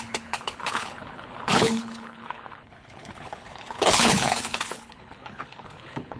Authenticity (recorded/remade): remade